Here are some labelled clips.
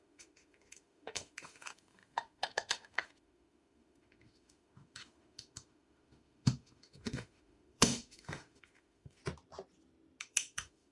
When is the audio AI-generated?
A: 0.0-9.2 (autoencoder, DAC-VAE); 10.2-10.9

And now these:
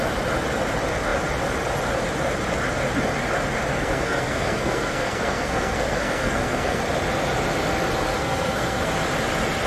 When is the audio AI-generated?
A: 3.7-6.8 (codec, SNAC); 8.2-8.9

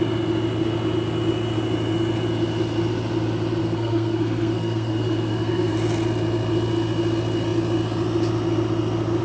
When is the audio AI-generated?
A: 3.6-5.7 (codec, SNAC)

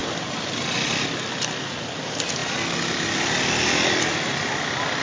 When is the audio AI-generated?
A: none

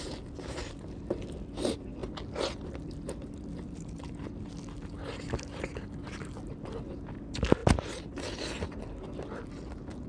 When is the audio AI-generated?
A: none

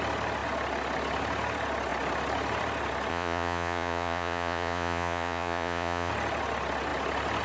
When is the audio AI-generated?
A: 3.1-6.1 (vocoder, Vocos)